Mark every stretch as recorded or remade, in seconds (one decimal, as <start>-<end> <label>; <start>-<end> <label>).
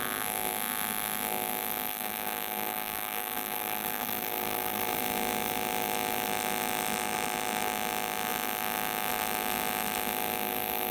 0.0-1.9 recorded; 1.9-4.8 remade; 4.8-10.9 recorded